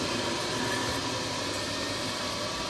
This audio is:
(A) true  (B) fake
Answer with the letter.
A